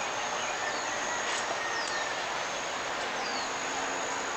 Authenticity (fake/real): real